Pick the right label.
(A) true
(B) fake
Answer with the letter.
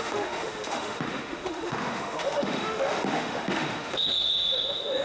B